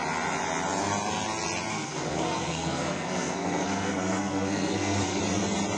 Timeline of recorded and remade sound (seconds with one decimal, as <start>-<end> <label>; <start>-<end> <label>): 0.0-1.7 recorded; 1.7-5.2 remade; 5.2-5.8 recorded